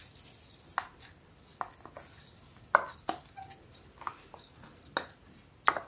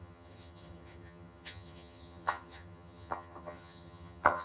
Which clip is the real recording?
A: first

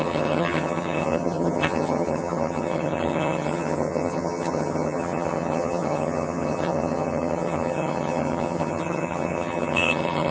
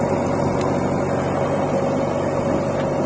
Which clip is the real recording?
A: second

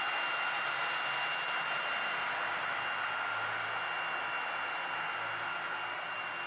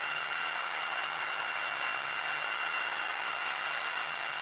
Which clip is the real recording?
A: first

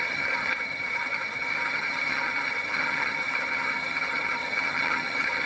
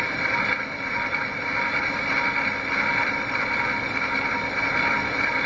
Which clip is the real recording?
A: second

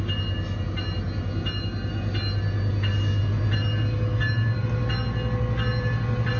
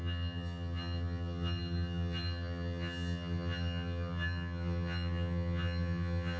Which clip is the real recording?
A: first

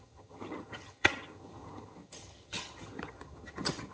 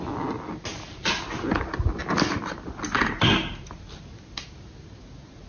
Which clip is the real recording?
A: second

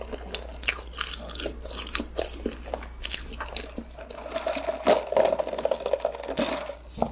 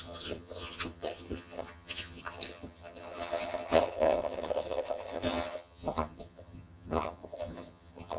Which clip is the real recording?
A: first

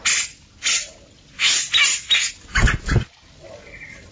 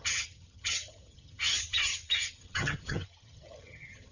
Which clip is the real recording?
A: first